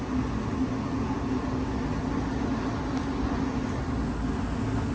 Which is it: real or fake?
real